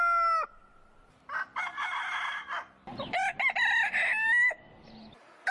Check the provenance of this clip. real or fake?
real